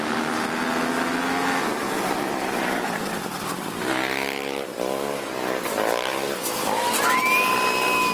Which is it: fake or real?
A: real